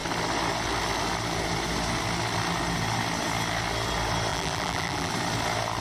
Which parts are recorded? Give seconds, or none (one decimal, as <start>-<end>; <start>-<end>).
0.0-4.3; 5.1-5.8